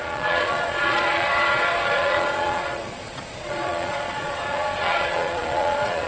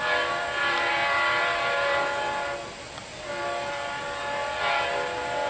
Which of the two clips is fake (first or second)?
first